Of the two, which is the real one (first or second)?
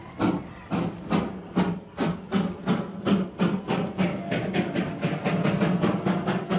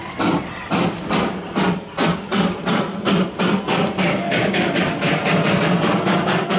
first